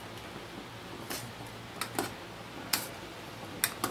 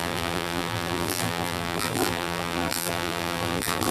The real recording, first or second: first